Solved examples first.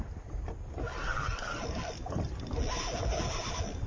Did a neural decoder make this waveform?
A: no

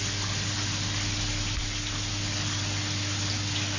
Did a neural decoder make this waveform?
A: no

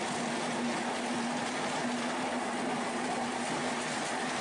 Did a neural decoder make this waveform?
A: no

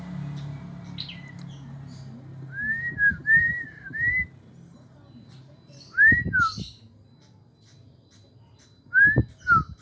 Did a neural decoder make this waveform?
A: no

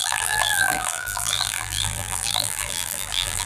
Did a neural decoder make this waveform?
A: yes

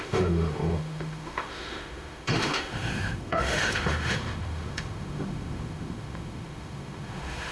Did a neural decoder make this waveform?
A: yes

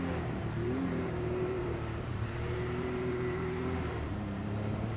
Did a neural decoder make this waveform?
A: yes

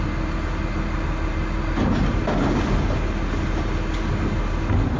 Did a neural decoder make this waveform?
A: no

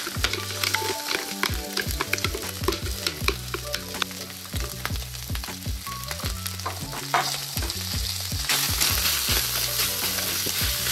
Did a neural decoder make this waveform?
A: no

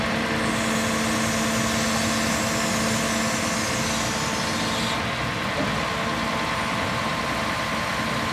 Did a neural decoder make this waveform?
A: no